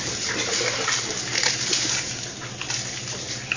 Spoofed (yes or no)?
no